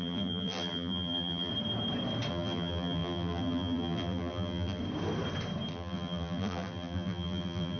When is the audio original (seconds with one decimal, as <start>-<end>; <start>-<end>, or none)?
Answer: 1.5-2.3; 4.8-5.7